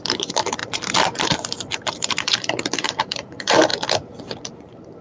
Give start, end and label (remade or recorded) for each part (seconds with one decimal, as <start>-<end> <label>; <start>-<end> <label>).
0.0-3.7 remade; 3.7-4.5 recorded; 4.5-5.0 remade